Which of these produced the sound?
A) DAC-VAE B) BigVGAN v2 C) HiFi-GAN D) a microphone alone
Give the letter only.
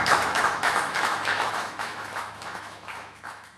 A